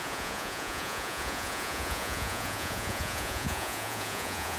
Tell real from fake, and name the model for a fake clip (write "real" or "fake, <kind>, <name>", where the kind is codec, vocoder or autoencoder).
fake, vocoder, Vocos